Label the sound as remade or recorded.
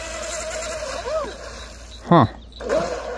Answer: recorded